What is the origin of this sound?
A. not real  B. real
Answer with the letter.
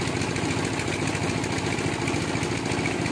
B